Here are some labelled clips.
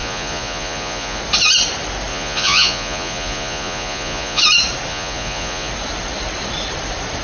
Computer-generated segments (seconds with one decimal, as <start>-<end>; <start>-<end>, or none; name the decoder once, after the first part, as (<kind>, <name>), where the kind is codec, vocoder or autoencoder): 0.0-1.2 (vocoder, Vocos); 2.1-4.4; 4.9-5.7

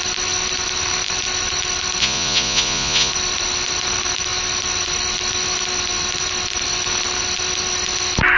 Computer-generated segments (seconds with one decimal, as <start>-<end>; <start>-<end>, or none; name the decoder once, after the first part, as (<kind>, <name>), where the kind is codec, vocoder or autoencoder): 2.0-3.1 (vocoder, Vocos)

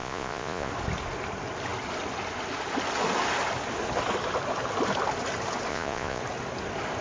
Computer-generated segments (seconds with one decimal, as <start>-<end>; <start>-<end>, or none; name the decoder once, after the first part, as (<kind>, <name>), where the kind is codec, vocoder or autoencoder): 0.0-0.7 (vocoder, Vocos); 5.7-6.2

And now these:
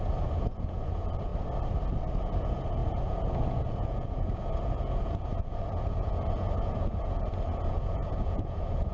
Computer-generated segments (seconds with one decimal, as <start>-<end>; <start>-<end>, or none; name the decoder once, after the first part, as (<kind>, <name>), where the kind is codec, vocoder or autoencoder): 0.0-1.3 (vocoder, Vocos); 2.2-8.9

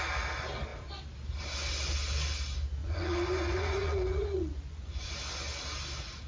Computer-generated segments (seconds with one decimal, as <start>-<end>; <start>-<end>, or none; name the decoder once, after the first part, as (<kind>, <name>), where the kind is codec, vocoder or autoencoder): 2.8-5.1 (vocoder, Vocos)

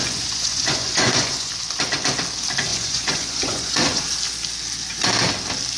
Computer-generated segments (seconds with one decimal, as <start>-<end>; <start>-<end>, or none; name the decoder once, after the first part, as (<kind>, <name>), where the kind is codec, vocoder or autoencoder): 0.0-1.5 (vocoder, Vocos); 2.7-4.0

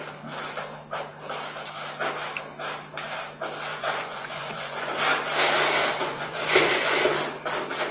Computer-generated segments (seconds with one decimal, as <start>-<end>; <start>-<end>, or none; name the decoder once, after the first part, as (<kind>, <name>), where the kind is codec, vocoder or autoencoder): 3.7-4.9 (vocoder, Vocos); 5.8-7.0

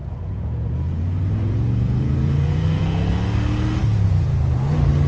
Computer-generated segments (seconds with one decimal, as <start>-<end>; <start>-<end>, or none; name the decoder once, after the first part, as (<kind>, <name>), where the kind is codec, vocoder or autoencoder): 0.0-3.1 (vocoder, Vocos)